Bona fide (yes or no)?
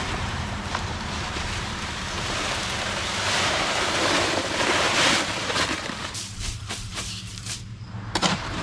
no